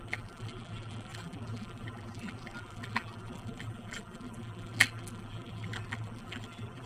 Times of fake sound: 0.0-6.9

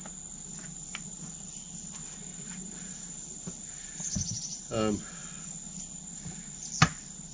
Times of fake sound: 2.3-4.6

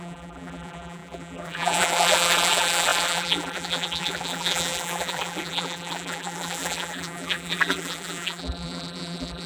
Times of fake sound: 0.0-9.5

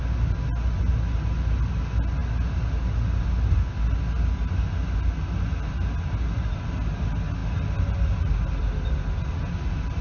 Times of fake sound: none